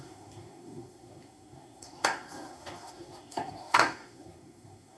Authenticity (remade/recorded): remade